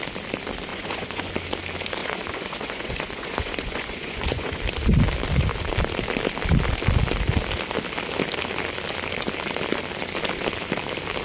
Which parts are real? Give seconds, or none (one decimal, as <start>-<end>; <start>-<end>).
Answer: 0.0-0.7; 1.3-2.0; 4.6-11.2